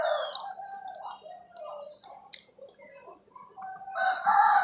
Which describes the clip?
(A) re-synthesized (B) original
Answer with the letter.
B